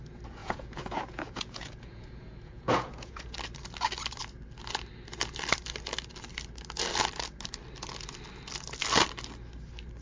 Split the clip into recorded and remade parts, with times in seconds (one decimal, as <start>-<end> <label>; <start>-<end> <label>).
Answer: 0.0-0.4 recorded; 0.4-3.3 remade; 3.3-10.0 recorded